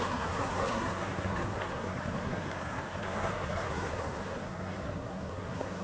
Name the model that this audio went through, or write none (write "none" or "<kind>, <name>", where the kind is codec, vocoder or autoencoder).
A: codec, SNAC